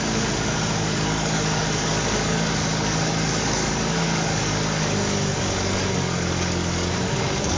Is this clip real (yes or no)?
no